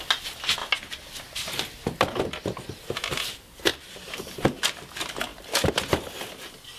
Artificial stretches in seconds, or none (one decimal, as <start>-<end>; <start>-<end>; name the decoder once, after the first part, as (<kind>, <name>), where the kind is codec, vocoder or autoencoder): 3.7-4.2 (vocoder, BigVGAN v2)